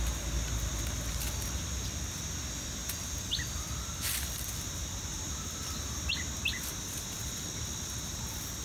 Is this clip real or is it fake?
real